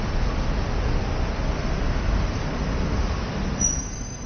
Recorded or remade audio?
recorded